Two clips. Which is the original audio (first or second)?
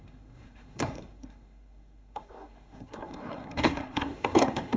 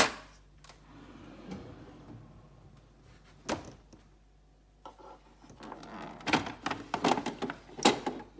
second